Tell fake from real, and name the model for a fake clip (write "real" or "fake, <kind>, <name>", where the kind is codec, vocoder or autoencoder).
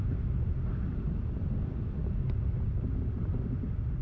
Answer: real